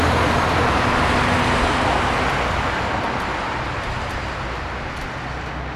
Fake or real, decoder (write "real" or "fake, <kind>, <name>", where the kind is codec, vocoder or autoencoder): real